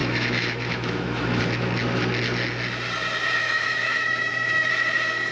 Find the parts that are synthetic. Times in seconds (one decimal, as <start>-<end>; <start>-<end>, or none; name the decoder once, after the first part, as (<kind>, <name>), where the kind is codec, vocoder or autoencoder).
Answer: 0.0-1.4 (autoencoder, DAC-VAE); 3.4-4.7